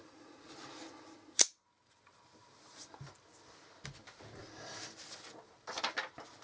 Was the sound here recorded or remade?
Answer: recorded